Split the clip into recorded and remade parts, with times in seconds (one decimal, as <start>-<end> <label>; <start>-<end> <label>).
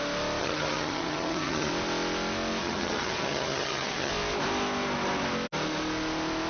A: 0.0-0.4 recorded; 0.4-1.7 remade; 1.7-2.6 recorded; 2.6-4.1 remade; 4.1-6.5 recorded